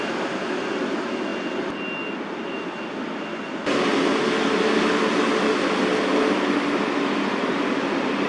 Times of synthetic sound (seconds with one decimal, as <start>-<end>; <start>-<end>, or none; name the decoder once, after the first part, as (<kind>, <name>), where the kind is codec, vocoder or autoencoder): none